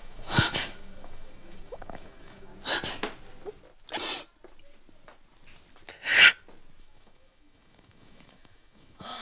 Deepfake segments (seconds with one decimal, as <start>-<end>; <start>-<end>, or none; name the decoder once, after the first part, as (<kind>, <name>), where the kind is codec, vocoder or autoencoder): 0.0-2.5 (autoencoder, DAC-VAE); 6.8-9.2